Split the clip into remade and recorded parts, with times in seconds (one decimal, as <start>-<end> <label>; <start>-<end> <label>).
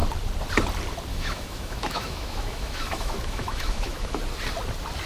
0.0-1.1 recorded; 1.1-4.2 remade; 4.2-5.1 recorded